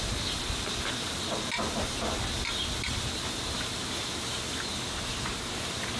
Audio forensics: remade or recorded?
recorded